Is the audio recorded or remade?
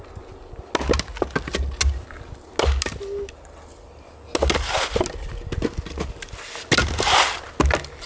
recorded